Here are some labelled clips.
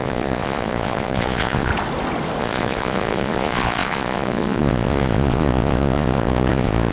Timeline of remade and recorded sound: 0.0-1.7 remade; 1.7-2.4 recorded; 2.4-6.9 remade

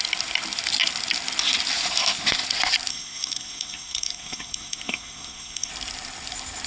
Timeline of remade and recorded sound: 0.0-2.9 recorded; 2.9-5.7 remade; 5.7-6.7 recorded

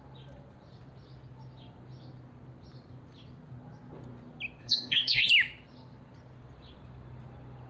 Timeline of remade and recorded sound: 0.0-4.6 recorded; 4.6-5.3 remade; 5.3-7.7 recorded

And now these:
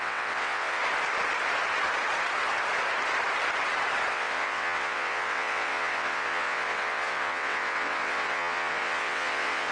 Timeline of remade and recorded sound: 0.0-0.8 remade; 0.8-4.1 recorded; 4.1-9.7 remade